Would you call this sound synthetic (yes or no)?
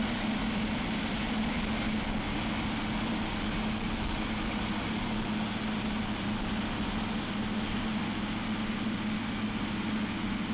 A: no